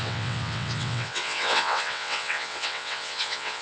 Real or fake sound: fake